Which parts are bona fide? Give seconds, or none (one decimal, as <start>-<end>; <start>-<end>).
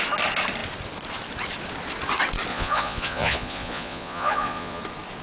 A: 0.0-2.5; 4.8-5.2